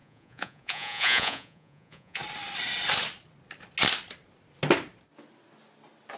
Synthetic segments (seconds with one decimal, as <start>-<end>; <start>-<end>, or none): 0.0-2.2